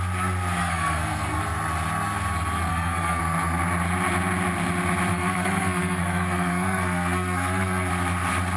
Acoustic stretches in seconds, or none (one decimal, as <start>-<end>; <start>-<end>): 0.0-0.6; 1.4-2.7; 3.2-5.1; 7.9-8.6